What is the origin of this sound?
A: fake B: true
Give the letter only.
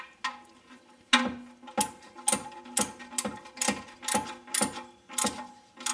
B